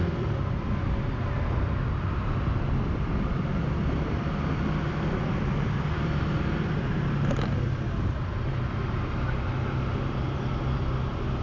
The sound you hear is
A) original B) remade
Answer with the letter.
A